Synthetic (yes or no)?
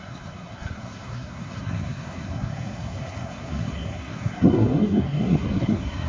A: yes